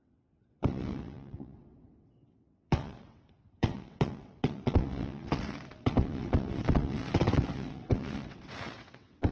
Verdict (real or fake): fake